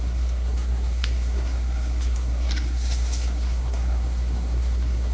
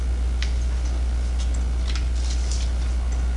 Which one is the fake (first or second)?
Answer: first